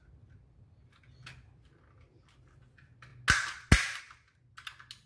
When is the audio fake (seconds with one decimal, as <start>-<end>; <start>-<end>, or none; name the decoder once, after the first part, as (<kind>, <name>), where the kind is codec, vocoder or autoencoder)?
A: none